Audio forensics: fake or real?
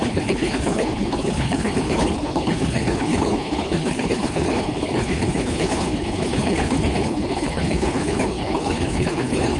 fake